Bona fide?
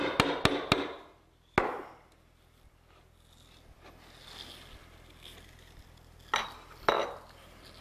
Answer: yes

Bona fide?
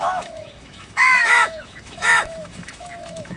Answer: no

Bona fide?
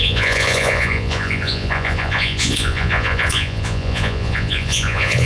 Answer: no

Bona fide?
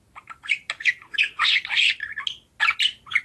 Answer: yes